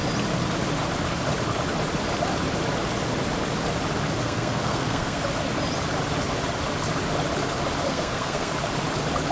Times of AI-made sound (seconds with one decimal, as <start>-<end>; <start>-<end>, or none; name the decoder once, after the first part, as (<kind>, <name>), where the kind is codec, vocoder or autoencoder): 4.2-5.2 (codec, SNAC); 7.9-8.5